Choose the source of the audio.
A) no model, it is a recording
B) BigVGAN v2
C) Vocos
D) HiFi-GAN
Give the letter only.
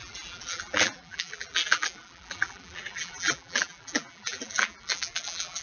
B